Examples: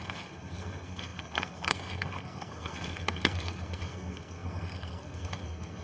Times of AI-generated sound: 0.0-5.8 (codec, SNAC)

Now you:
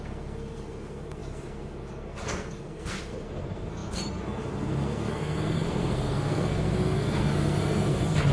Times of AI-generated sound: 0.0-8.3 (codec, SNAC)

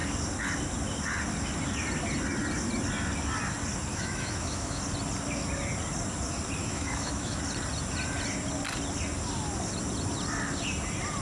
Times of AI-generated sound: 3.9-4.8 (autoencoder, DAC-VAE); 6.6-7.4